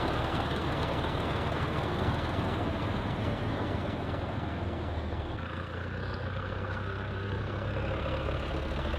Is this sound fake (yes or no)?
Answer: yes